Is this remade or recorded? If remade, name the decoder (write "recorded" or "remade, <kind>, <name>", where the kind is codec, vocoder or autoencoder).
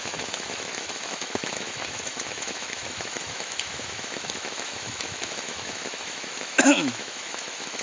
remade, autoencoder, DAC-VAE